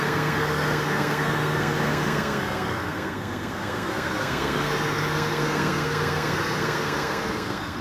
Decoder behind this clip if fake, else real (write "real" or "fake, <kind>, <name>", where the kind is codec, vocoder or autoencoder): fake, codec, SNAC